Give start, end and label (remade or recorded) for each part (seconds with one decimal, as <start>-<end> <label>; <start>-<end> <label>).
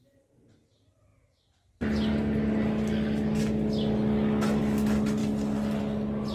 0.0-6.3 recorded